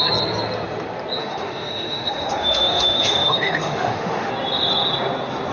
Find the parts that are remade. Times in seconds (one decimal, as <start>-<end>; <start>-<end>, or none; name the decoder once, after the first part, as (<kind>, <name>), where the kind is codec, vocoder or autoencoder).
1.2-4.3 (autoencoder, DAC-VAE)

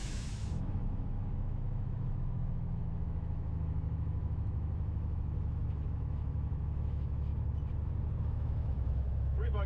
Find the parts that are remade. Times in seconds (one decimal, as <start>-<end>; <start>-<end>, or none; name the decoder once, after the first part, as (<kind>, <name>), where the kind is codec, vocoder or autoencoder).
0.0-7.3 (autoencoder, DAC-VAE); 8.2-9.7

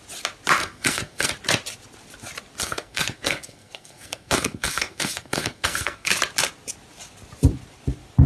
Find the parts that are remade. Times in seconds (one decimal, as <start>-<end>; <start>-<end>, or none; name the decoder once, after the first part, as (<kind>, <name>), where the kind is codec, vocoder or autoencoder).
0.6-1.3 (codec, SNAC); 2.6-6.1

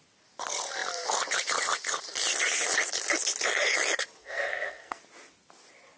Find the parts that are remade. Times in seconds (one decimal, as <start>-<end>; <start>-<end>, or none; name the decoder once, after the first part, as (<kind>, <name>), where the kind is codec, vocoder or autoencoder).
4.2-5.0 (codec, SNAC)

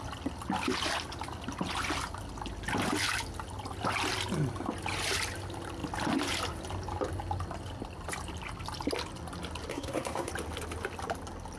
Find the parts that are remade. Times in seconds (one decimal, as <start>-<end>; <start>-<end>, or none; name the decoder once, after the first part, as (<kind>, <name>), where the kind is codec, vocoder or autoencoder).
9.7-10.3 (codec, SNAC)

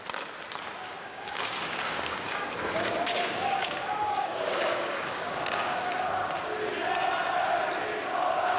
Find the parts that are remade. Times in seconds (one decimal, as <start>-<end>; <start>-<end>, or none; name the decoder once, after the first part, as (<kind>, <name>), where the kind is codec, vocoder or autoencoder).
0.8-6.0 (codec, DAC)